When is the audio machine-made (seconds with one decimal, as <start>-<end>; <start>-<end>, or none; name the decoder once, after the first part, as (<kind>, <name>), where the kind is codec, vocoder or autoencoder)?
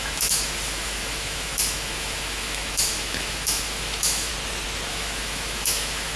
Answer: 0.0-4.3 (autoencoder, DAC-VAE); 4.9-6.2